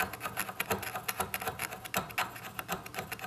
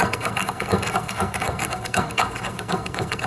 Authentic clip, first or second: first